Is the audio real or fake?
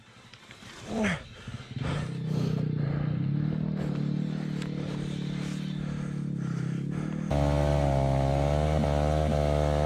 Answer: real